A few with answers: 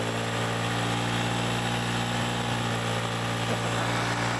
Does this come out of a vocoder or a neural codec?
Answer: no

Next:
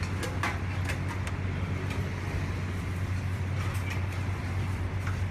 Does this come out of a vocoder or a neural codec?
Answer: no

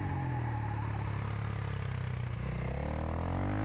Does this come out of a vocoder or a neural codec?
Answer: no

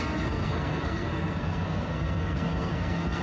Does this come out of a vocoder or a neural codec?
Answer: yes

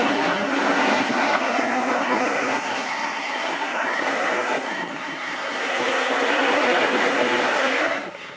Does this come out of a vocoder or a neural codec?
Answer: yes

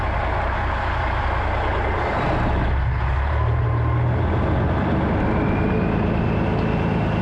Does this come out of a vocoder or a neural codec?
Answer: no